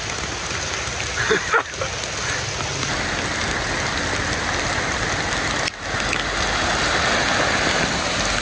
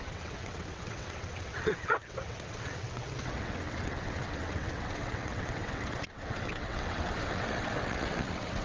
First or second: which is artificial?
second